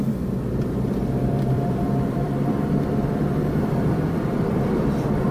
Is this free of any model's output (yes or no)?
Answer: no